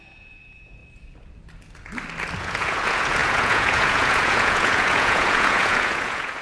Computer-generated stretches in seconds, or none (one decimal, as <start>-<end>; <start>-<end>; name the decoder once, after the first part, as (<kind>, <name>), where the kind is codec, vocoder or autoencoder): 0.0-0.8 (vocoder, Vocos); 2.4-6.4

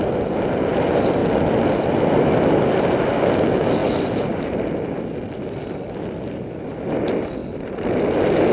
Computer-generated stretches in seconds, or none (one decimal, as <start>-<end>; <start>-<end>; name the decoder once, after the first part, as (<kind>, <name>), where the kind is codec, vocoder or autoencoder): none

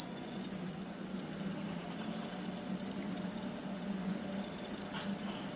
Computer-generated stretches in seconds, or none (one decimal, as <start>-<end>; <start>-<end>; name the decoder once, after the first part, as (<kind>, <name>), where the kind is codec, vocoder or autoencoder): 0.0-1.1 (vocoder, Vocos); 3.6-4.2